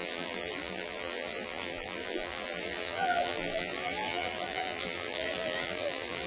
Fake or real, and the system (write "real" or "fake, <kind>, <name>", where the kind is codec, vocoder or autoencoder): fake, vocoder, BigVGAN v2